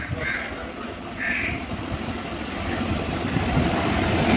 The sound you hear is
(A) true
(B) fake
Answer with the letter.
A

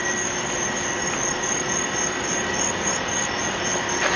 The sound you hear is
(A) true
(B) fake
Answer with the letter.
A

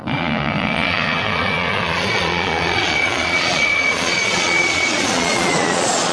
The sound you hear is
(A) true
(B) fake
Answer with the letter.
B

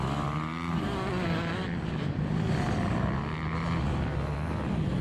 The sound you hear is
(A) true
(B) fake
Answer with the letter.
A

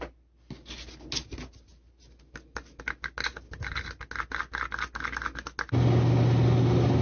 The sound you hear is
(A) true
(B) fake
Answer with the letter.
A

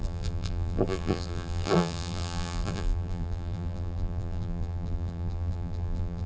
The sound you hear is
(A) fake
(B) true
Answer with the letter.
A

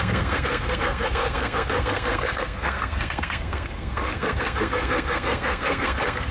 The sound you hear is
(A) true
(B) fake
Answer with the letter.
B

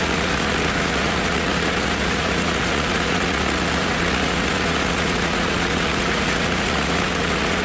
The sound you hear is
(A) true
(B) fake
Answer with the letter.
B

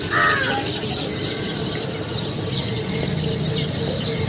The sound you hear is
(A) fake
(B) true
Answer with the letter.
B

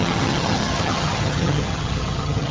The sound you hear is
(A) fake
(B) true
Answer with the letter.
A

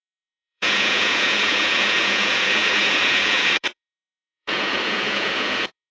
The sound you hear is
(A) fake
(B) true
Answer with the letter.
A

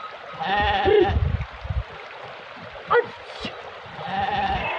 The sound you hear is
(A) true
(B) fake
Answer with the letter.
A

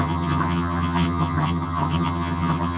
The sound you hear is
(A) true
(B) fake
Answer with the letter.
B